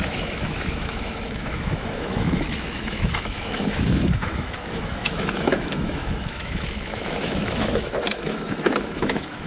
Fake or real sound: fake